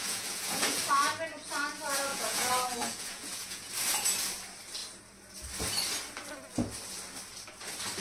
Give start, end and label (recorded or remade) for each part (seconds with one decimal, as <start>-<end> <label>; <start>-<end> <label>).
0.0-0.8 remade; 0.8-2.1 recorded; 2.1-3.7 remade; 3.7-8.0 recorded